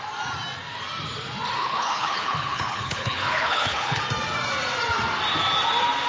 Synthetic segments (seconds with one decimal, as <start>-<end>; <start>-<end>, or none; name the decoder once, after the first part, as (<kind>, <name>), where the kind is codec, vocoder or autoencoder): 1.6-4.0 (codec, HILCodec)

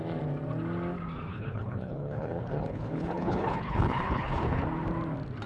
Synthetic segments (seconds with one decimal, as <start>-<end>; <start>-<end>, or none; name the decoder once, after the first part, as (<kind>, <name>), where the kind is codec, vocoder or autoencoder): 1.3-4.6 (codec, HILCodec)

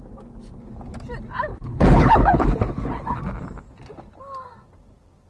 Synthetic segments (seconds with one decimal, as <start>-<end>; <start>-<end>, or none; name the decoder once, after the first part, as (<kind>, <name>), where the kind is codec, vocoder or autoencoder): 1.5-3.2 (codec, HILCodec)

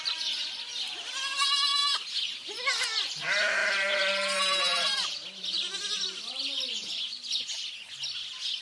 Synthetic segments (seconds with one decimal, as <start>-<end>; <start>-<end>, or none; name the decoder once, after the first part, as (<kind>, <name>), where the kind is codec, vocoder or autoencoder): none